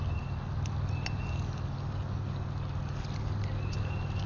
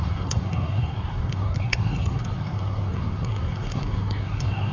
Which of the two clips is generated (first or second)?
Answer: second